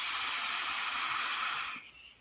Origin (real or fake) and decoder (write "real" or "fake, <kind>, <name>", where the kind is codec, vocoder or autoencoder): real